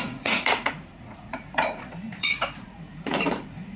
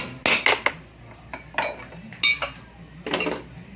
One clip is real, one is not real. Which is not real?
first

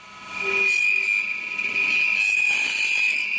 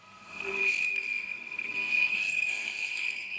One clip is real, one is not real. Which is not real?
second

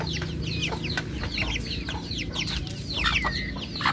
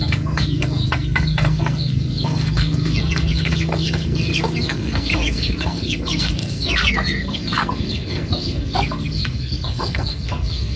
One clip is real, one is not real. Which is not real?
second